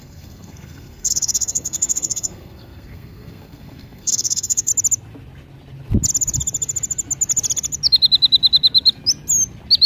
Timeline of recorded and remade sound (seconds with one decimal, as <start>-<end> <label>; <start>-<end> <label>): 0.0-4.7 remade; 4.7-9.9 recorded